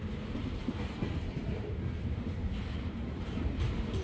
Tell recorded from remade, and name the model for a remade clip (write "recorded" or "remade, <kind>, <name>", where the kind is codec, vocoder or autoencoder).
remade, vocoder, BigVGAN v2